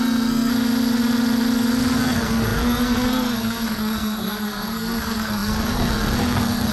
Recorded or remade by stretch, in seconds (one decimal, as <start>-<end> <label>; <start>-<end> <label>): 0.0-0.5 remade; 0.5-2.0 recorded; 2.0-6.7 remade